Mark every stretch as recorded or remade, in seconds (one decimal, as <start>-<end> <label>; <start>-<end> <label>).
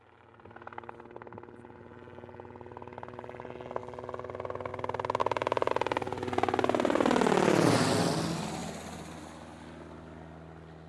0.0-10.9 recorded